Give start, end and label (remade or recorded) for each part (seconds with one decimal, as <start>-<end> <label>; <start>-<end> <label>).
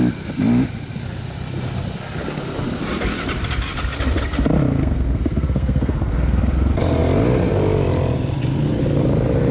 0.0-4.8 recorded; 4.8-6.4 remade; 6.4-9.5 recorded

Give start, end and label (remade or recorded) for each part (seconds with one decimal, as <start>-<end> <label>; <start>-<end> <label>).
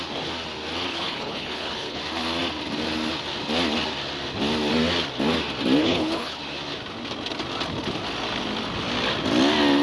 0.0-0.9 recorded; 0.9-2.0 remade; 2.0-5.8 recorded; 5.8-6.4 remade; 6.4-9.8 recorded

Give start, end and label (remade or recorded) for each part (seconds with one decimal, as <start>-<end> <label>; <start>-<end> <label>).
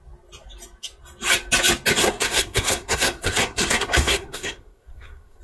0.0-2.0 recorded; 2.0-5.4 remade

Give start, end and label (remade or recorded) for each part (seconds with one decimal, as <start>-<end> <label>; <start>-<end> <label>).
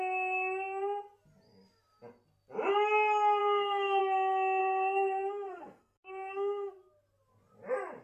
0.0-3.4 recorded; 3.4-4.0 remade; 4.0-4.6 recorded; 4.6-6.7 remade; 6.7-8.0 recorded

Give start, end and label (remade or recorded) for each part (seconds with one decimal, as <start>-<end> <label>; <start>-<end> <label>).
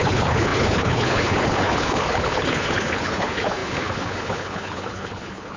0.0-5.6 remade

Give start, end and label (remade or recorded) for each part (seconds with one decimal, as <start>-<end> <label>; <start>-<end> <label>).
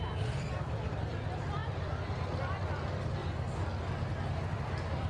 0.0-1.6 remade; 1.6-2.4 recorded; 2.4-3.2 remade; 3.2-4.5 recorded; 4.5-5.1 remade